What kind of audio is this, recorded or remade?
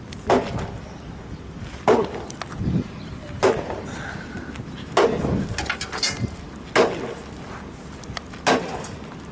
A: recorded